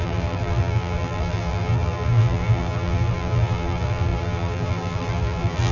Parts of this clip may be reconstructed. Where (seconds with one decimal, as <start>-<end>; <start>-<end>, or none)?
0.0-5.7

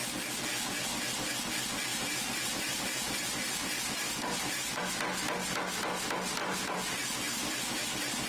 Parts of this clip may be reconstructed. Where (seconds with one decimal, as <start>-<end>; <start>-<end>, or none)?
1.9-4.8; 6.4-7.8

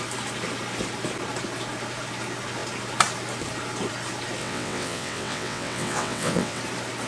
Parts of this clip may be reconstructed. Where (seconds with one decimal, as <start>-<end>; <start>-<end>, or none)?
4.4-6.6

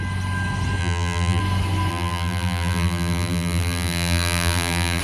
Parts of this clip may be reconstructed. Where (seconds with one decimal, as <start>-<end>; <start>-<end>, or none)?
0.8-1.4; 1.9-5.0

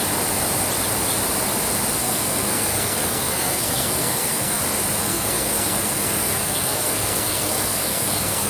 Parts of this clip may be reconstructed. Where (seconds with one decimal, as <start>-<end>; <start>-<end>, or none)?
2.0-4.6; 5.0-8.5

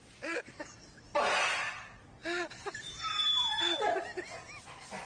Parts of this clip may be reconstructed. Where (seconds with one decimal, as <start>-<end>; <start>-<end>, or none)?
2.2-3.5

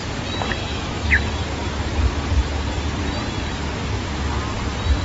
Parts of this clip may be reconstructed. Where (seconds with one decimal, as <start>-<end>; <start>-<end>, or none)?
0.6-1.2